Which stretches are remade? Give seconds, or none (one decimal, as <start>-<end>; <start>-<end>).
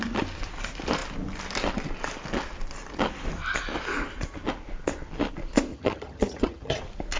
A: 5.7-6.8